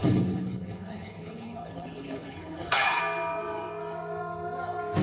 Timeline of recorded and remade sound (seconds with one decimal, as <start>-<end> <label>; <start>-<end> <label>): 0.0-3.0 remade; 3.0-5.0 recorded